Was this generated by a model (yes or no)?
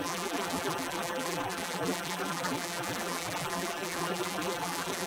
yes